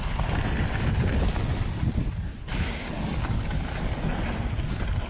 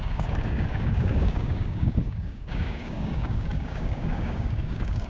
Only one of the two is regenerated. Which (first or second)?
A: second